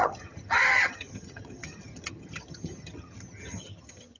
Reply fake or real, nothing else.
fake